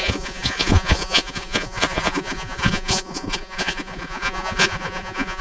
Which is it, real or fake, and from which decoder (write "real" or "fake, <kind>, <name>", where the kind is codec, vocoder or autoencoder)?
fake, vocoder, Vocos